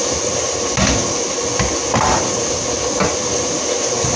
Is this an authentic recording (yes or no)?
yes